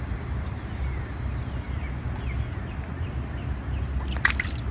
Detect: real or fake real